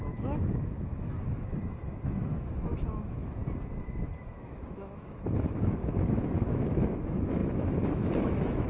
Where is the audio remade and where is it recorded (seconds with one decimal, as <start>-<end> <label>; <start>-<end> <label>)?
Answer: 0.0-3.4 remade; 3.4-4.2 recorded; 4.2-8.7 remade